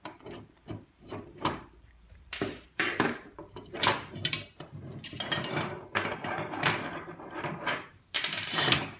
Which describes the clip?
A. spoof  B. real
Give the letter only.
A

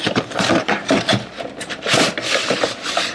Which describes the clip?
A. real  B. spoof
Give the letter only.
B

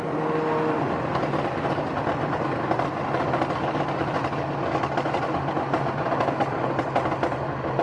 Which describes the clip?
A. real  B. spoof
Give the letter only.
A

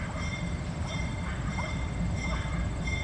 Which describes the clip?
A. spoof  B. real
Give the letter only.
A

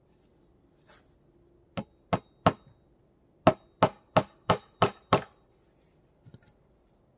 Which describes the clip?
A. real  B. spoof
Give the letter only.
A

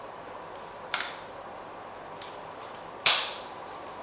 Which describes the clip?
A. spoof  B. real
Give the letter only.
A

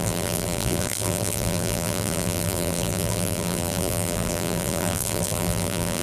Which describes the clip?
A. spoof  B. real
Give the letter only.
A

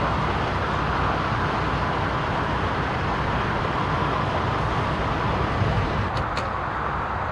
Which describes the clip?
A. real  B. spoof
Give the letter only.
A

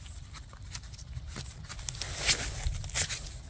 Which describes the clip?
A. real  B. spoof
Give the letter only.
A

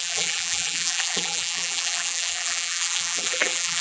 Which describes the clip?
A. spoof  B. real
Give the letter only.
A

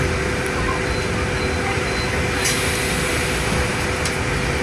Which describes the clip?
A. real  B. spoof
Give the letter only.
A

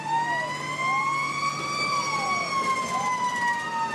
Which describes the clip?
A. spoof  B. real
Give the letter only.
B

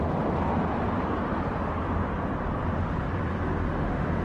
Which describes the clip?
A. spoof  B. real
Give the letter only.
B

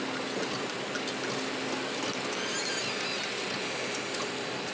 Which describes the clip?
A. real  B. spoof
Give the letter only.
A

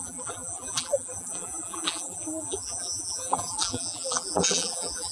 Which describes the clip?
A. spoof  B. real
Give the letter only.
A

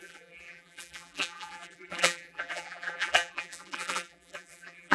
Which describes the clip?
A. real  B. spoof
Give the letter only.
B